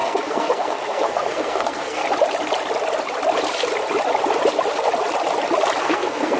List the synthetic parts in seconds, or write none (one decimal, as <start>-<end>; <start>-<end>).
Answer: 0.0-2.0; 5.8-6.4